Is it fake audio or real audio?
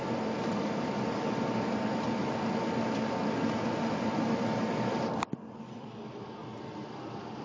real